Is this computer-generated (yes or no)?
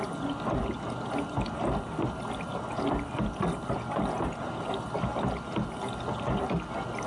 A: no